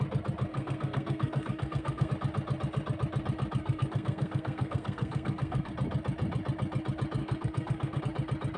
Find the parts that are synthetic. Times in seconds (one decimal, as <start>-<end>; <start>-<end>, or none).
0.5-2.1; 3.6-5.7; 7.2-8.0